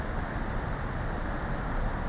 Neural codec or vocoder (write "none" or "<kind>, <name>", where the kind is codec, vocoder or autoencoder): none